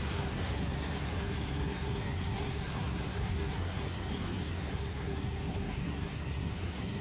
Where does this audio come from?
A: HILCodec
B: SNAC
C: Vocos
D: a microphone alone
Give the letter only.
B